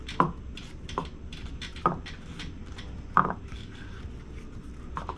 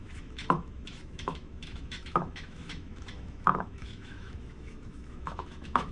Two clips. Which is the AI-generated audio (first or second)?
second